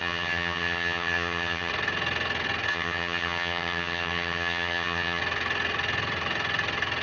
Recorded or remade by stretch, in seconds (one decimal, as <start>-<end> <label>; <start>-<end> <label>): 0.0-1.7 remade; 1.7-2.7 recorded; 2.7-5.2 remade; 5.2-7.0 recorded